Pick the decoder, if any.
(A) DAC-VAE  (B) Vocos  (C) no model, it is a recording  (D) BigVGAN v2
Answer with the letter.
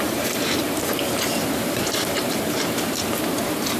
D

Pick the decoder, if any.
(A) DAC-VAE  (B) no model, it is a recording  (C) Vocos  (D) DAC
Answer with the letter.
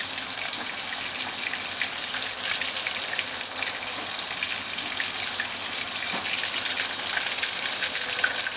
B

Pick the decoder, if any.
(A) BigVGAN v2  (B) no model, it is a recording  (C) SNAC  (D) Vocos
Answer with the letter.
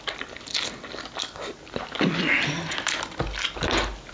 B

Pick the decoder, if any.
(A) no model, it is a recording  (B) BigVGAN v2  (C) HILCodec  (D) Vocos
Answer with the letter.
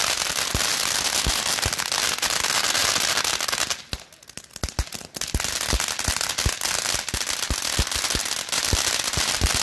A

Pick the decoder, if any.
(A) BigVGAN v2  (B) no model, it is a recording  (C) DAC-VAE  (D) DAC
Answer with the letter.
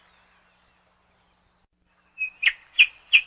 B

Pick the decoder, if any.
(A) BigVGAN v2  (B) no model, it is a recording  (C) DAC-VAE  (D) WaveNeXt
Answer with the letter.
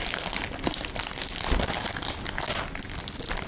B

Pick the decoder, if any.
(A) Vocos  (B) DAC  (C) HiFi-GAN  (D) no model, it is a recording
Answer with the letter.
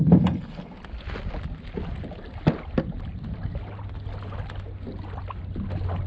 D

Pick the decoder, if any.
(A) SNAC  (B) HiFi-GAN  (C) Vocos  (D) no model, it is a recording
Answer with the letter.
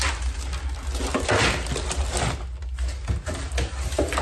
D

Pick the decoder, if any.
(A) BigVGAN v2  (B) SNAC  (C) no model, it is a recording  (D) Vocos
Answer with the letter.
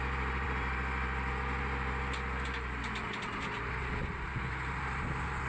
C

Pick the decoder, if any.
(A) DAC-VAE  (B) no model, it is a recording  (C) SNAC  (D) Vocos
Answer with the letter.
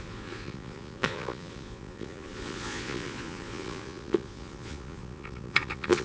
D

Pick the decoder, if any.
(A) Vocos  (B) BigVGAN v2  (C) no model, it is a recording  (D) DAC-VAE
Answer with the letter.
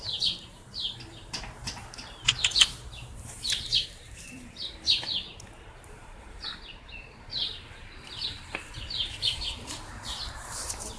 B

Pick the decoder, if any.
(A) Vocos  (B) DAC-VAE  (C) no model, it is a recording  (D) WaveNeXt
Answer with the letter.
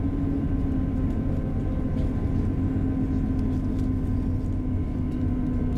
C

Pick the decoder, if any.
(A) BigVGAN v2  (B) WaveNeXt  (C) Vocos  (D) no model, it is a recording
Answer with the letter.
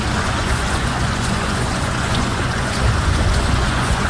C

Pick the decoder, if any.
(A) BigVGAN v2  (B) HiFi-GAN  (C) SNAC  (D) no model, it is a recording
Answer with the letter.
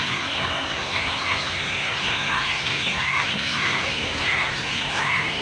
C